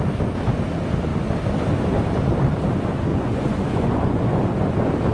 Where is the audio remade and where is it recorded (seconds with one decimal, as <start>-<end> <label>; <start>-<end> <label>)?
0.0-3.1 recorded; 3.1-4.5 remade; 4.5-5.1 recorded